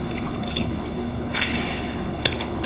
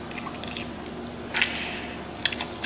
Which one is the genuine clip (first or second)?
second